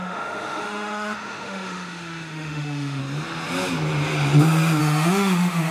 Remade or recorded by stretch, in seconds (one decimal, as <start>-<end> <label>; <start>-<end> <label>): 0.0-3.0 remade; 3.0-4.8 recorded; 4.8-5.7 remade